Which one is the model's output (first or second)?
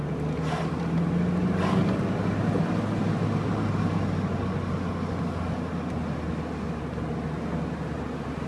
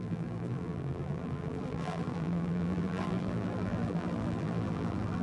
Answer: second